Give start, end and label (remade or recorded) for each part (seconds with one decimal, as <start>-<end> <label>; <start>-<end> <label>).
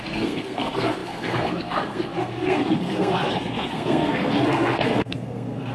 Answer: 0.0-5.7 remade